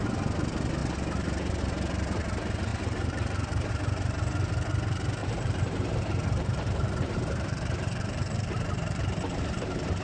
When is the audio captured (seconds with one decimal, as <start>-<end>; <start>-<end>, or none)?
0.0-2.7; 3.7-5.2; 9.4-10.0